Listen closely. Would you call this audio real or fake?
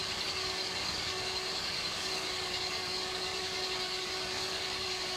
fake